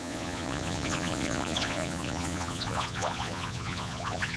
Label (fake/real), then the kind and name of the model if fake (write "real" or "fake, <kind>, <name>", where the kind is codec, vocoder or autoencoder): fake, vocoder, Vocos